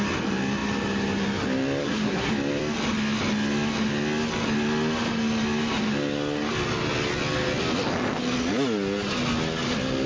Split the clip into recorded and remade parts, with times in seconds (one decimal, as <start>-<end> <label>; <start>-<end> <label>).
0.0-1.8 recorded; 1.8-2.3 remade; 2.3-10.1 recorded